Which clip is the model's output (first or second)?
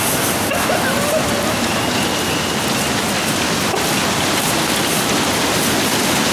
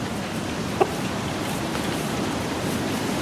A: second